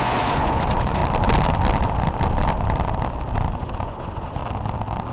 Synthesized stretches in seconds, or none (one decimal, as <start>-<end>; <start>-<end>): 0.0-1.0; 3.5-4.4